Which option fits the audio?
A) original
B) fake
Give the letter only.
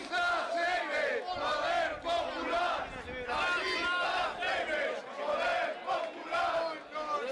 A